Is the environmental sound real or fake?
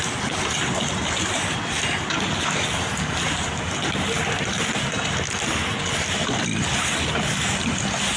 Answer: real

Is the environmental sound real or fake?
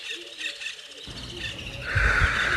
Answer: real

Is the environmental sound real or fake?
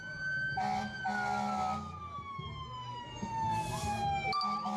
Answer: real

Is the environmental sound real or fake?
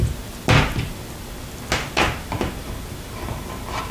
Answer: real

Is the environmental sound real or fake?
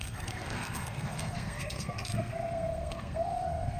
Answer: fake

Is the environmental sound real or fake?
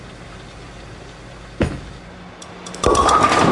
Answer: real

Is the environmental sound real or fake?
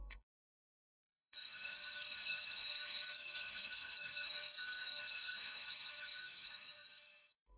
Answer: fake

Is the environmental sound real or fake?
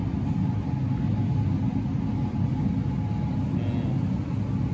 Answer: real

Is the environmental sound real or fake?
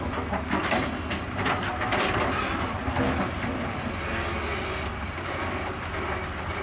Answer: real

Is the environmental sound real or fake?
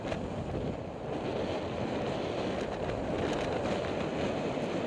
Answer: real